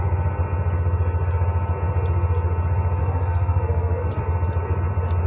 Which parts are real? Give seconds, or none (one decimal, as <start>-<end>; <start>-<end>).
0.0-3.0; 4.2-5.3